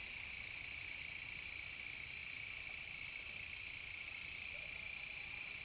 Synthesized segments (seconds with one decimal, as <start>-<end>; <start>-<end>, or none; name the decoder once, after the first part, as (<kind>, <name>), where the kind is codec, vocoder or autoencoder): none

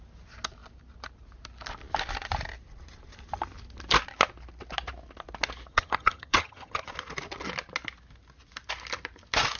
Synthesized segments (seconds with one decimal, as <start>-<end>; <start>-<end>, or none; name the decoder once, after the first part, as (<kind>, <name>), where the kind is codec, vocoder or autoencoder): 5.7-6.9 (vocoder, HiFi-GAN)

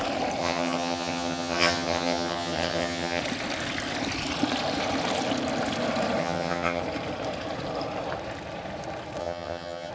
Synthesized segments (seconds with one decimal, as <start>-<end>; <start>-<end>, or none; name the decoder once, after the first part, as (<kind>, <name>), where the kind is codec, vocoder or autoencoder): 0.4-3.2 (vocoder, HiFi-GAN); 6.2-6.8; 9.2-9.9

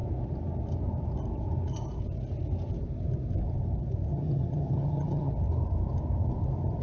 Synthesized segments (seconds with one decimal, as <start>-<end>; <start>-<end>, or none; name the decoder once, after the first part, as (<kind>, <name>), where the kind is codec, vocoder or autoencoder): 4.1-5.3 (vocoder, HiFi-GAN)

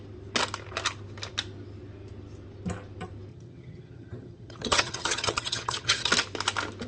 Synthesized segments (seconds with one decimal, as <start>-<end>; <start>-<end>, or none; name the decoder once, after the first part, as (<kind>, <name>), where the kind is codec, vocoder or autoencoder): 3.3-6.1 (vocoder, HiFi-GAN)

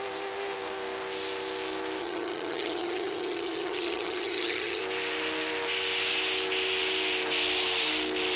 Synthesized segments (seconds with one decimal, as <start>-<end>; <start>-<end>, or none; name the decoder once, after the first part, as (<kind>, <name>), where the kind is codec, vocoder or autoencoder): 2.0-4.8 (vocoder, HiFi-GAN)

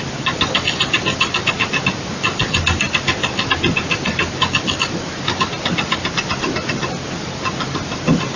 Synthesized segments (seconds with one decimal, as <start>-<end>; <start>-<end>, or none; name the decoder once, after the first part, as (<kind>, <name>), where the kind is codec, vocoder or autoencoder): none